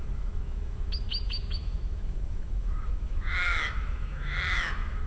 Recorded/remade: remade